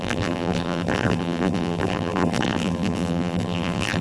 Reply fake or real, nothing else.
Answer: fake